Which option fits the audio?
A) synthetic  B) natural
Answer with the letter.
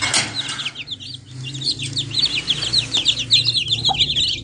B